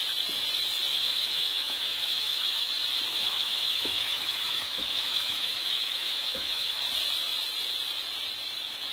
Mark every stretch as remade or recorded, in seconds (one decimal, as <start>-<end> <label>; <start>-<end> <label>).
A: 0.0-0.9 recorded; 0.9-2.7 remade; 2.7-3.1 recorded; 3.1-6.8 remade; 6.8-8.9 recorded

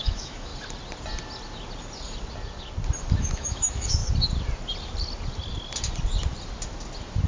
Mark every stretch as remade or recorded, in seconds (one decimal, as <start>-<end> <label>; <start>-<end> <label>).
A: 0.0-0.5 remade; 0.5-3.2 recorded; 3.2-4.0 remade; 4.0-7.3 recorded

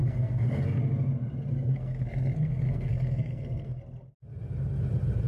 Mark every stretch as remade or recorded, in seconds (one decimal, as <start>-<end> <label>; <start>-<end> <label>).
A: 0.0-0.8 remade; 0.8-1.5 recorded; 1.5-3.8 remade; 3.8-5.3 recorded

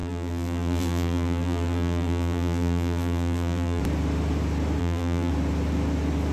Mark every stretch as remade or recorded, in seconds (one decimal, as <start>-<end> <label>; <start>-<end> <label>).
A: 0.0-3.8 remade; 3.8-4.8 recorded; 4.8-5.3 remade; 5.3-6.3 recorded

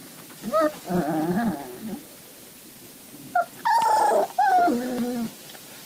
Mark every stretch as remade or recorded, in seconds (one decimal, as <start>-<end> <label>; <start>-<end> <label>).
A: 0.0-5.9 recorded

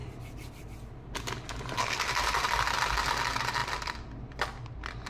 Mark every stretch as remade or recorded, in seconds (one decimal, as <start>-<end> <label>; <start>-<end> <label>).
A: 0.0-3.1 remade; 3.1-3.6 recorded; 3.6-5.1 remade